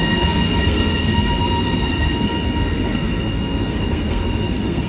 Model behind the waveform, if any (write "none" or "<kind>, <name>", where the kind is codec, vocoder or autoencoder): codec, SNAC